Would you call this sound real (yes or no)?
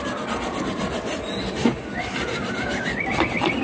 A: yes